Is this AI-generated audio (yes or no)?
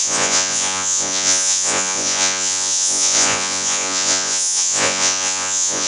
yes